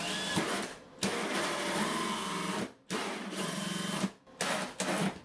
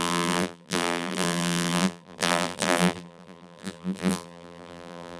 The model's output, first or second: second